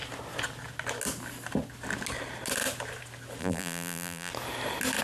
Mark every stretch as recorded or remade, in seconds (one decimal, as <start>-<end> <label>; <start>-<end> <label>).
0.0-3.4 recorded; 3.4-4.3 remade; 4.3-5.0 recorded